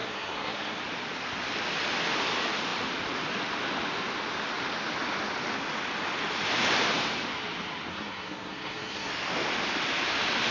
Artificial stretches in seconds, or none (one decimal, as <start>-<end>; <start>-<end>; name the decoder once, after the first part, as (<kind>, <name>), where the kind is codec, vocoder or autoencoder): 0.0-0.8 (codec, SNAC); 7.9-9.1